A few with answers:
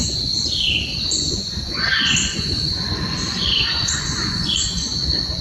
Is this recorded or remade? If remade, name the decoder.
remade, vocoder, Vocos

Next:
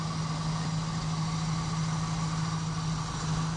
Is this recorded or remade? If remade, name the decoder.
recorded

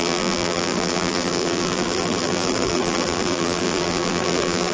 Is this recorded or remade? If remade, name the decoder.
remade, vocoder, BigVGAN v2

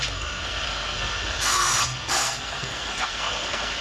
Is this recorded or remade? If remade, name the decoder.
remade, codec, SNAC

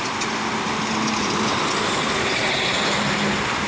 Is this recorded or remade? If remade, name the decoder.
recorded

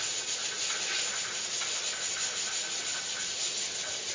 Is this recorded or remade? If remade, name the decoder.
recorded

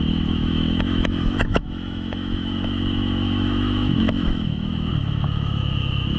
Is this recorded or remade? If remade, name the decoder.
remade, autoencoder, DAC-VAE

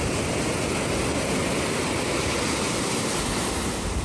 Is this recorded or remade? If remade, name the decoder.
recorded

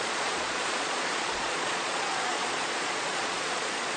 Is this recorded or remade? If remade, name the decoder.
remade, vocoder, Vocos